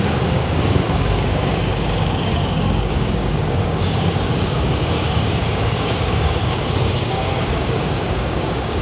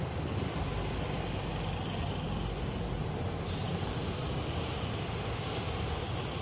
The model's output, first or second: first